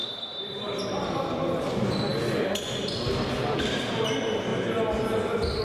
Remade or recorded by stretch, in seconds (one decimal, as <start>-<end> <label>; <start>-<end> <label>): 0.0-5.6 recorded